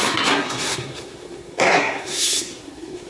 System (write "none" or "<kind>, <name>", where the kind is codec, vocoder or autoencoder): codec, SNAC